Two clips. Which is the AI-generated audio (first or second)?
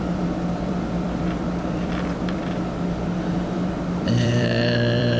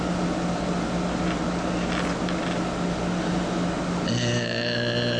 first